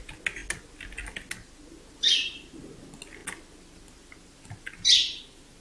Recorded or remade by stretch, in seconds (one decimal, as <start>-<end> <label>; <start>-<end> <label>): 0.0-5.6 recorded